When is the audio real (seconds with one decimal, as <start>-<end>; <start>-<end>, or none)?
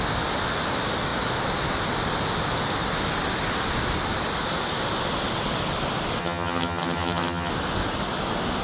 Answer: 0.0-6.2; 7.5-8.6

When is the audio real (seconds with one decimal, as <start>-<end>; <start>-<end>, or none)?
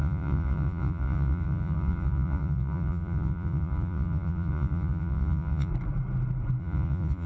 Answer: 5.7-6.6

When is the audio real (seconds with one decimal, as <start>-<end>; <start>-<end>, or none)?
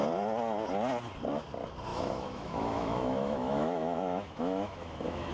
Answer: 0.0-1.9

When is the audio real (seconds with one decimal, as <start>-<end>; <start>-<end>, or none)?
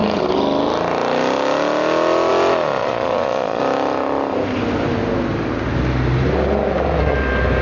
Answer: 0.0-2.8; 3.6-7.6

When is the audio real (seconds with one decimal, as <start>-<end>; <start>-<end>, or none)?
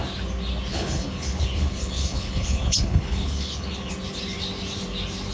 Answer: 0.0-0.7; 3.9-5.3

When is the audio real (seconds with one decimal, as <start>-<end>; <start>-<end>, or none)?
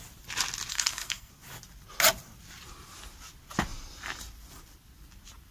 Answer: 0.0-0.7; 1.3-5.5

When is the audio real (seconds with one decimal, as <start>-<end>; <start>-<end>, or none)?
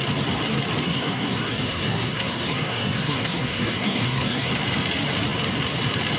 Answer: 0.0-0.8; 4.5-6.2